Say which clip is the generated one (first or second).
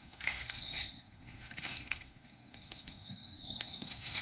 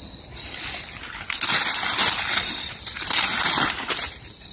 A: first